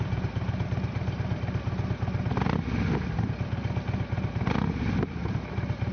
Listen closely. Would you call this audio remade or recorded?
recorded